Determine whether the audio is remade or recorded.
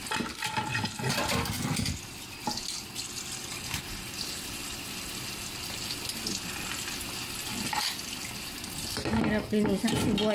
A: recorded